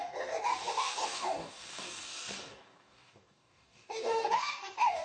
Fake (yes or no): yes